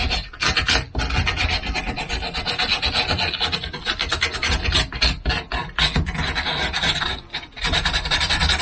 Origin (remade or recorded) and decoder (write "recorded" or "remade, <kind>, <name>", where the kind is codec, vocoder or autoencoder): recorded